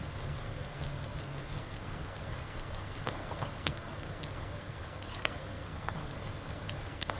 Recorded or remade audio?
remade